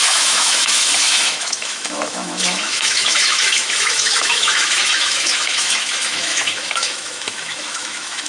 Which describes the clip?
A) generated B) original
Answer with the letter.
A